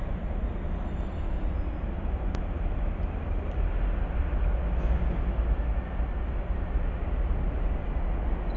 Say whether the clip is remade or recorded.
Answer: recorded